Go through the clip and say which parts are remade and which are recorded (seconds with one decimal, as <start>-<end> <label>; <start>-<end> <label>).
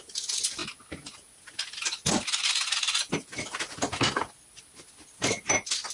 0.0-5.9 recorded